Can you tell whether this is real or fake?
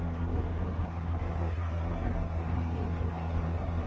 fake